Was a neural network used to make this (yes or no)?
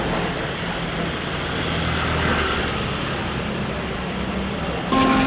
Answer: no